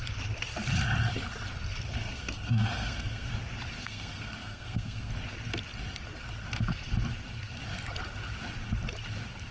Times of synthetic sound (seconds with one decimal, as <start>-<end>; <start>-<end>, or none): 1.9-3.3; 3.8-5.1